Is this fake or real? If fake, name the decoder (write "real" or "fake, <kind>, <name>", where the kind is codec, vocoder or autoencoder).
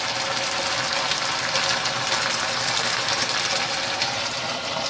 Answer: real